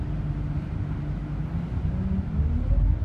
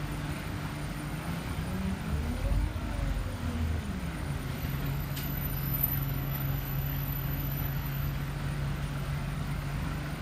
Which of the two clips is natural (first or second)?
first